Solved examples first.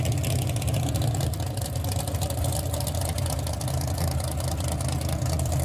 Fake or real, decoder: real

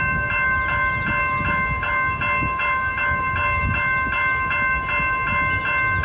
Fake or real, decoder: real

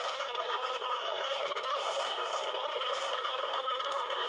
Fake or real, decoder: fake, codec, SNAC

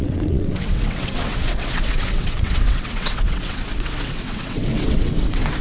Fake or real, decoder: fake, vocoder, WaveNeXt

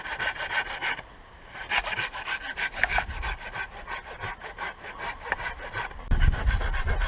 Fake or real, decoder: real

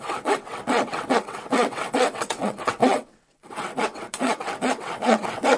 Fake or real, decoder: fake, vocoder, WaveNeXt